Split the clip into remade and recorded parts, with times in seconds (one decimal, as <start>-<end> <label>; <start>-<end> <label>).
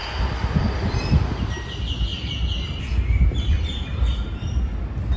0.0-5.2 recorded